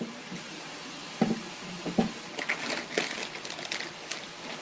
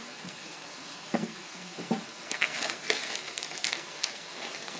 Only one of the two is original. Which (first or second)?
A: first